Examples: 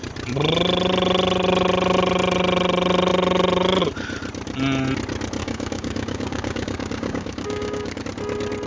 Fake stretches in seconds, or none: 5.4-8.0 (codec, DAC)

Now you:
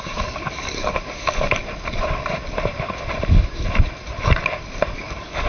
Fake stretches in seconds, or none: 0.0-1.6 (codec, DAC); 4.9-5.5

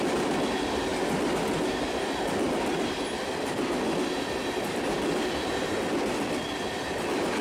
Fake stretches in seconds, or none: none

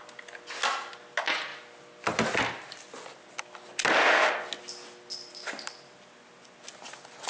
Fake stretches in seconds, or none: none

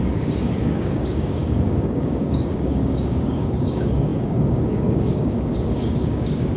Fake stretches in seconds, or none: 0.0-6.6 (codec, DAC)

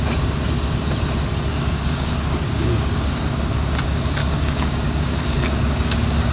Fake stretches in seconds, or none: 1.5-3.2 (codec, DAC); 4.2-6.3

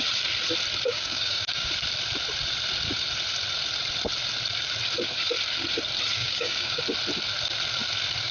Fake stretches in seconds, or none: 0.9-1.7 (codec, DAC); 6.2-6.8